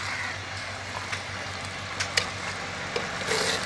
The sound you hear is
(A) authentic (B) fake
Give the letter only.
A